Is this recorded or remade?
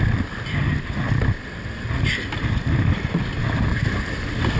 recorded